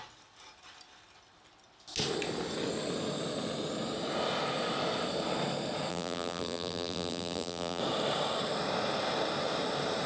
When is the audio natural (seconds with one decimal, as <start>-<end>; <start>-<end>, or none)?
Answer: 0.0-5.9; 7.8-10.1